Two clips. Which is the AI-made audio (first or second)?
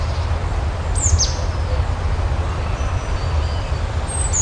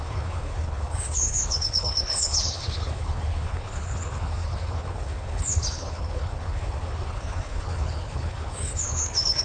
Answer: second